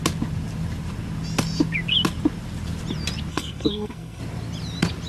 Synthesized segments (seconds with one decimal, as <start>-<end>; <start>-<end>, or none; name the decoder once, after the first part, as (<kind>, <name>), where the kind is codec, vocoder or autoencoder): 3.3-4.2 (codec, SNAC)